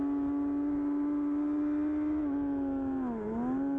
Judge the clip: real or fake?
real